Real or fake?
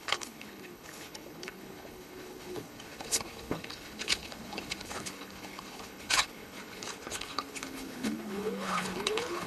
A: fake